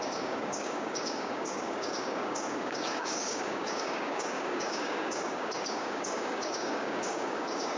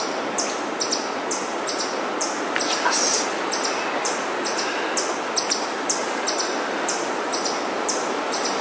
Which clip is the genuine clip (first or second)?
second